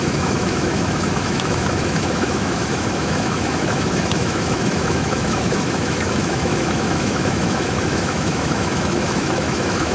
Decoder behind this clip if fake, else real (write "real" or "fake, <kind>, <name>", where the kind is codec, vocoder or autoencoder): fake, autoencoder, DAC-VAE